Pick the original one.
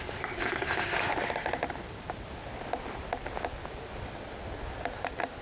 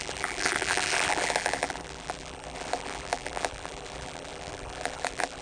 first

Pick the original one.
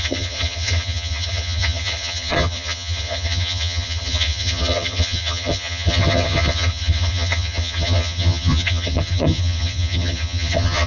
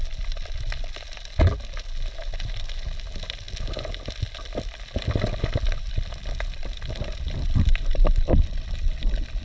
second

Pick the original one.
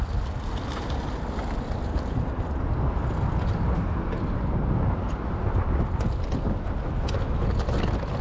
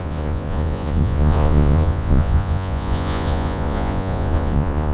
first